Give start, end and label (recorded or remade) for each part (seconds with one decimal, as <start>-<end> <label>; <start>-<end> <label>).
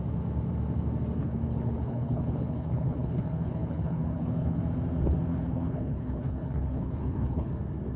0.0-1.2 recorded; 1.2-4.6 remade; 4.6-5.3 recorded; 5.3-7.5 remade; 7.5-8.0 recorded